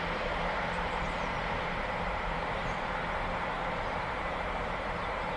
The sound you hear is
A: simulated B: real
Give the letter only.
A